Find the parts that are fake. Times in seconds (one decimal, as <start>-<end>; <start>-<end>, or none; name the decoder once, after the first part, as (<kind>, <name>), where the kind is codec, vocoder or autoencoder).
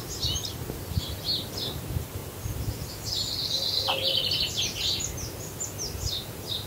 none